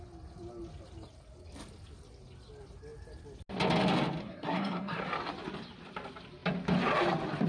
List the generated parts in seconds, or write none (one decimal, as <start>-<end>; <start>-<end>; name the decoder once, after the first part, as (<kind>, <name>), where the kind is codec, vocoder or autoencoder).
4.2-5.0 (codec, SNAC)